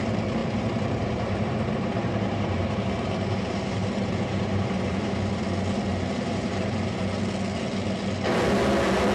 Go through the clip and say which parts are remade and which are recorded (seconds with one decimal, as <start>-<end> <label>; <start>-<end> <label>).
0.0-0.4 recorded; 0.4-5.3 remade; 5.3-5.9 recorded; 5.9-7.0 remade; 7.0-9.1 recorded